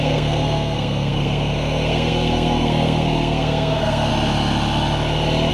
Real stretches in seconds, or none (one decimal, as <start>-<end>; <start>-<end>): 4.1-5.5